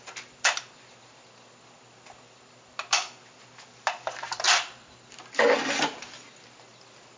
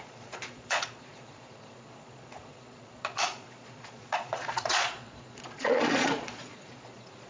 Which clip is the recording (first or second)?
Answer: first